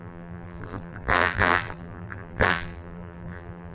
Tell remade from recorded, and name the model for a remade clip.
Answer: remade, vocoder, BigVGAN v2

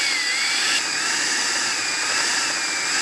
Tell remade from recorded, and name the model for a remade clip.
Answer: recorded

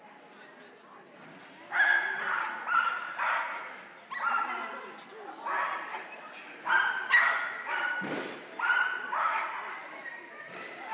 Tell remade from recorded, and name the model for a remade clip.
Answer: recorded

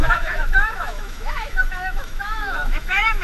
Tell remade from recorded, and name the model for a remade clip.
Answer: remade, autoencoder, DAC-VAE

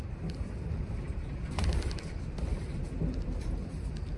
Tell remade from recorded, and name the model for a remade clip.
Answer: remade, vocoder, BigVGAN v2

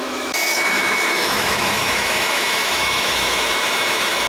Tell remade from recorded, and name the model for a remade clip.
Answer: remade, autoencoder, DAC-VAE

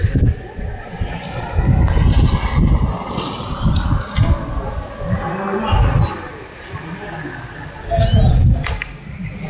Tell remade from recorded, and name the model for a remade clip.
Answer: recorded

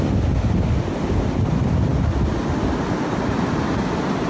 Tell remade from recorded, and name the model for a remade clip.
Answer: recorded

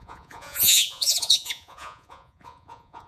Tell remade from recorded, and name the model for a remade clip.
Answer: remade, vocoder, Vocos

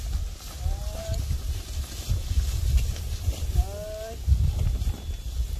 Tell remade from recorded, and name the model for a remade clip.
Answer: recorded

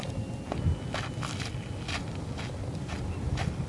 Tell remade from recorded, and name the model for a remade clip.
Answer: recorded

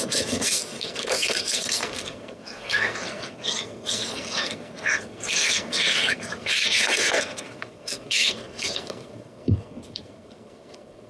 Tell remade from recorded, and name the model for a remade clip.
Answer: remade, codec, SNAC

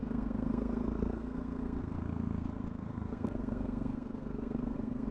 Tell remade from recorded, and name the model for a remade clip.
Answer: remade, codec, SNAC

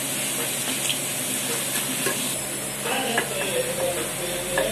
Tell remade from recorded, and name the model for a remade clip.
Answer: recorded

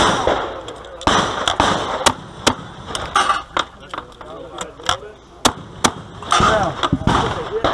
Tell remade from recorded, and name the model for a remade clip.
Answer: recorded